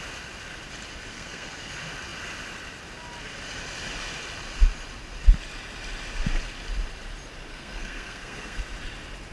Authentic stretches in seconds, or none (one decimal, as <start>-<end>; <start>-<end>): 0.0-1.1; 1.7-7.5; 8.6-9.3